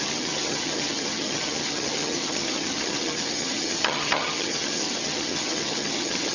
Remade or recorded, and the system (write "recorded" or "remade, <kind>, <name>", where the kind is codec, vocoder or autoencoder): remade, vocoder, HiFi-GAN